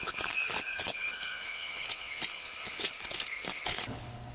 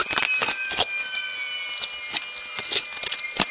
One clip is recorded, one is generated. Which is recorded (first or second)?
second